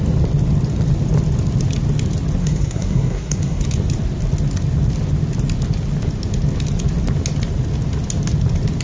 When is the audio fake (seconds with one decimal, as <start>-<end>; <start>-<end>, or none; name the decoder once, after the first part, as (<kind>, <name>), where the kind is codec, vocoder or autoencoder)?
2.4-3.6 (codec, SNAC)